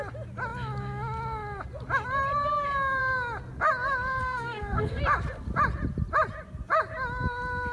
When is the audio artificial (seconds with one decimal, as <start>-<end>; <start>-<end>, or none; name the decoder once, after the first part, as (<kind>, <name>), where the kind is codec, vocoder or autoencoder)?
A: 4.2-5.0 (codec, SNAC)